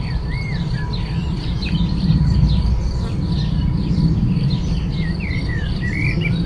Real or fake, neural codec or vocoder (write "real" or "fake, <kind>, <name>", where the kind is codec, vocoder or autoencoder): fake, vocoder, BigVGAN v2